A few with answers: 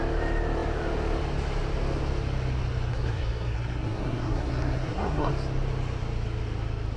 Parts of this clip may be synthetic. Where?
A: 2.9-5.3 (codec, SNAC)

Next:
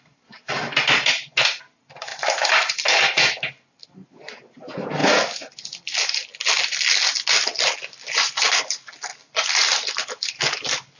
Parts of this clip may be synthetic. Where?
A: 2.1-3.0 (vocoder, BigVGAN v2); 9.1-10.4